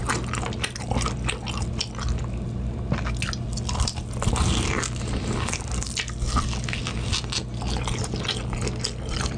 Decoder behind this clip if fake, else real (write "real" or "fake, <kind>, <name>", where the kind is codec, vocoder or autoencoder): real